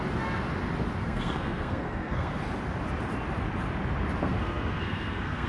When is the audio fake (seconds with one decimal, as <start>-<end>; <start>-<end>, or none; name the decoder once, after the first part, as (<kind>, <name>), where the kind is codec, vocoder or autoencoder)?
1.0-2.3 (codec, SNAC); 4.2-5.5